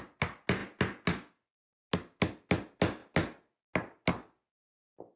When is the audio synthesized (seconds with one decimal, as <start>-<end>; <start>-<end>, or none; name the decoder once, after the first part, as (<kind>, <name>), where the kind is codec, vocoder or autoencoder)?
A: none

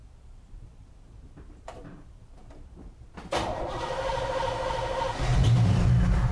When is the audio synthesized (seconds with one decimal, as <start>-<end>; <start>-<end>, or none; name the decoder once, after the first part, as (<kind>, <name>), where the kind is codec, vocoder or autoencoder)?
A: 0.0-3.6 (vocoder, BigVGAN v2)

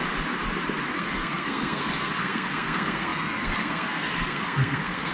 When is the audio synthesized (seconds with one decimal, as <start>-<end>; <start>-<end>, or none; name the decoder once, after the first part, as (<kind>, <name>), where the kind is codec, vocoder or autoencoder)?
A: 0.9-5.1 (codec, SNAC)

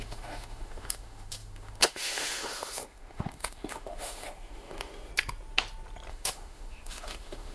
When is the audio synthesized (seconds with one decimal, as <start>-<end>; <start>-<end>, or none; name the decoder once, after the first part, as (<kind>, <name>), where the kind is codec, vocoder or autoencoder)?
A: 0.0-5.1 (autoencoder, DAC-VAE); 6.1-7.5

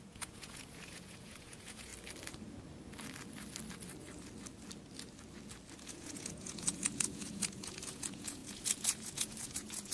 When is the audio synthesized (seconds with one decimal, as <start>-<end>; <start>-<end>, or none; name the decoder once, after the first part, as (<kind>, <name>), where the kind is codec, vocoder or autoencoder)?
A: 0.0-1.9 (vocoder, Vocos); 5.9-9.9

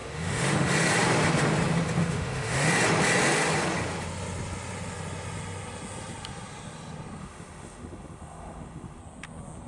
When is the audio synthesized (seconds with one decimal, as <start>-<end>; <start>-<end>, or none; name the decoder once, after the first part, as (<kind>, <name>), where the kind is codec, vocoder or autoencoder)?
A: 0.0-0.7 (autoencoder, DAC-VAE); 2.0-2.7; 7.2-9.0